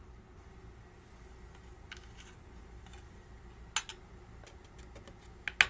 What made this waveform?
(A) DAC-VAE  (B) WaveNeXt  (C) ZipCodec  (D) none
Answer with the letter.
D